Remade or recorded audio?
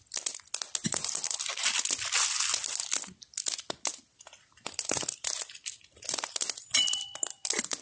recorded